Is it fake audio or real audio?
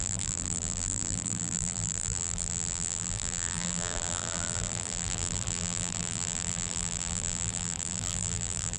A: fake